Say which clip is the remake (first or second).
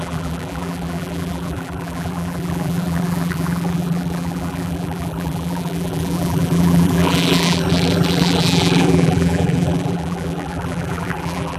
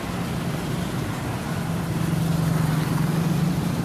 first